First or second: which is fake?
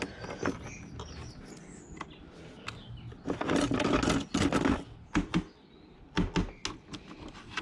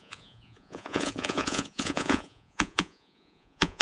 second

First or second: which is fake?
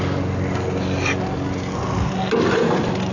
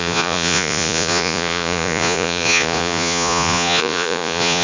second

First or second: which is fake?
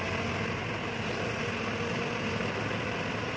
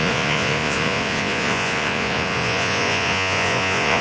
second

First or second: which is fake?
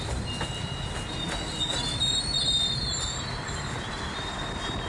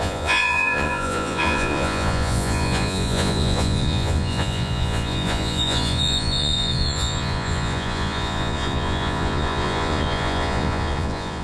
second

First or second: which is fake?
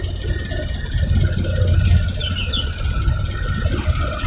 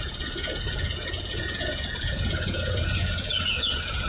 second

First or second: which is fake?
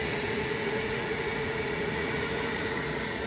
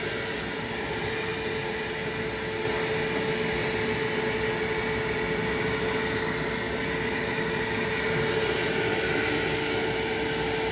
first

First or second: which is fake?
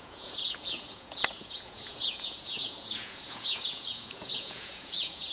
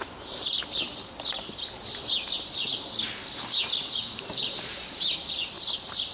first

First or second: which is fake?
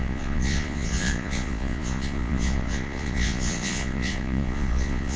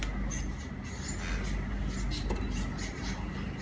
first